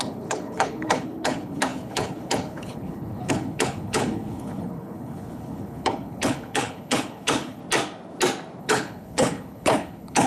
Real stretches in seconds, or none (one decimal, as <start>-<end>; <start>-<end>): 7.6-8.6